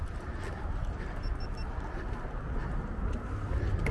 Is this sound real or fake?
real